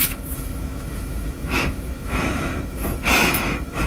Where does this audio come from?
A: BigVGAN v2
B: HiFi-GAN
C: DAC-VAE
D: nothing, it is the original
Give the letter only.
C